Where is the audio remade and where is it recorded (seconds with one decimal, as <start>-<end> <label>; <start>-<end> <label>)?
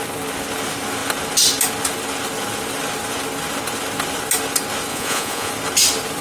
0.0-4.9 recorded; 4.9-5.5 remade; 5.5-6.2 recorded